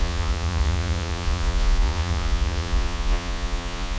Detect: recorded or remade remade